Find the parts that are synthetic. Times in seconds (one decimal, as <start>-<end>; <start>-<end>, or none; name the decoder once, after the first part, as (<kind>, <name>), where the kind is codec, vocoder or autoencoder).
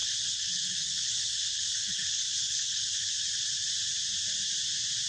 0.0-3.1 (codec, HILCodec)